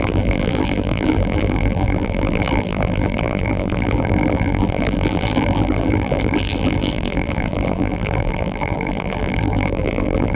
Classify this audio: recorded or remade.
remade